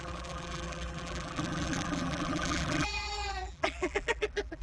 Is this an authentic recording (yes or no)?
no